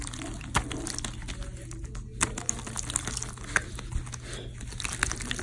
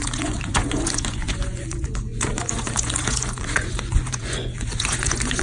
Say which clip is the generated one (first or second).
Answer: second